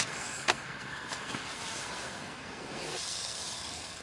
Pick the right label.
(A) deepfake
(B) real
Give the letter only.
A